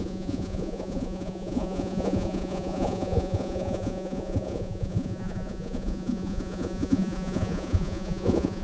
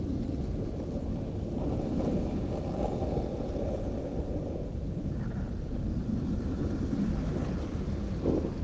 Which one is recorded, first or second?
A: second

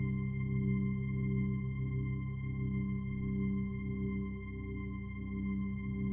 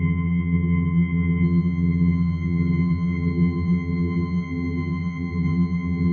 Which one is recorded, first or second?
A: first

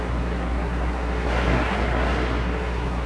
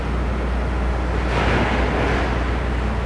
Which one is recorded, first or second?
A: second